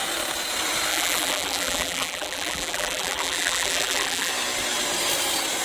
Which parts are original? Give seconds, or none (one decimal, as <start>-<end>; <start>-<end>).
0.0-0.9; 4.3-5.6